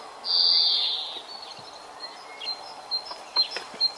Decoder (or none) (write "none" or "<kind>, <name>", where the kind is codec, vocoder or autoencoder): none